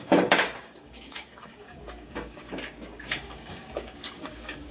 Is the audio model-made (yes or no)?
yes